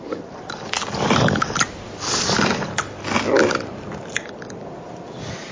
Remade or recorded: recorded